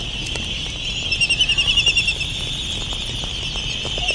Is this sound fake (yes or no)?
no